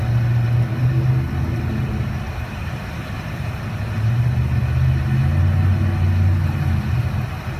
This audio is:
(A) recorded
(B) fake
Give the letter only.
A